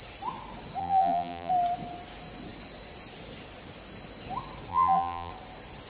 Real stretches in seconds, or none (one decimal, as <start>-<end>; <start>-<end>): 0.0-0.8; 1.5-4.7; 5.3-5.9